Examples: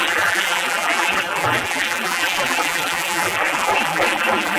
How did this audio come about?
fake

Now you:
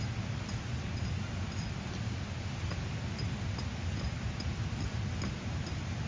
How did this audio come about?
real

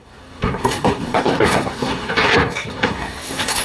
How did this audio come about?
fake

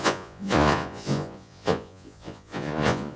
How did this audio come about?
fake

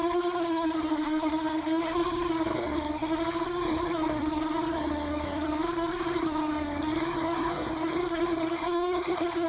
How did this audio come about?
fake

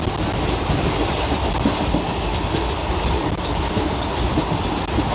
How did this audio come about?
real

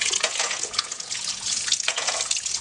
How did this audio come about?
fake